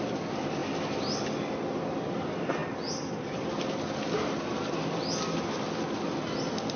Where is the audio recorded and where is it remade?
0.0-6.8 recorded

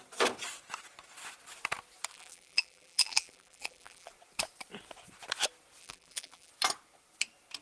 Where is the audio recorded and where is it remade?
0.0-2.1 recorded; 2.1-4.1 remade; 4.1-5.8 recorded; 5.8-6.5 remade; 6.5-7.6 recorded

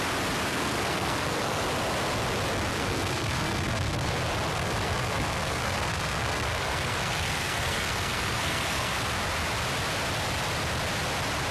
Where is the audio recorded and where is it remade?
0.0-0.5 recorded; 0.5-1.6 remade; 1.6-2.7 recorded; 2.7-4.1 remade; 4.1-4.5 recorded; 4.5-9.0 remade; 9.0-11.5 recorded

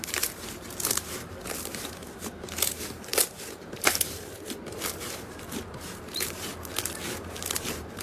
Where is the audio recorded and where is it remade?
0.0-3.1 remade; 3.1-3.6 recorded; 3.6-6.5 remade; 6.5-7.3 recorded; 7.3-8.0 remade

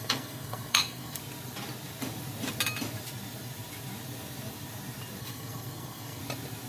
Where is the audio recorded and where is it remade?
0.0-1.2 remade; 1.2-5.2 recorded; 5.2-6.2 remade; 6.2-6.7 recorded